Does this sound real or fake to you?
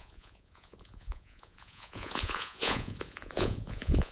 fake